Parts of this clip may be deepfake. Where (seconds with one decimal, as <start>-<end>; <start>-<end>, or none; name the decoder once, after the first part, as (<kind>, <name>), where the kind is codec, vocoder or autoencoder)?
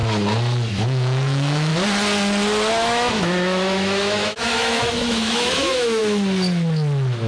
0.7-1.7 (autoencoder, DAC-VAE); 2.7-6.0